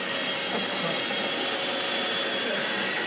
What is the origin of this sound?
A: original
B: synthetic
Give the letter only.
A